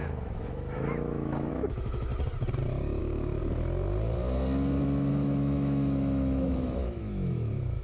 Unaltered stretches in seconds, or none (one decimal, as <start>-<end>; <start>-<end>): 2.1-3.0; 3.4-5.1